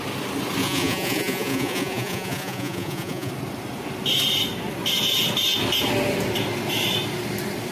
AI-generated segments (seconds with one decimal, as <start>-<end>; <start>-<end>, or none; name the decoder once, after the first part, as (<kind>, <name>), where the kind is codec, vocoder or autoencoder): 0.6-3.3 (vocoder, Vocos)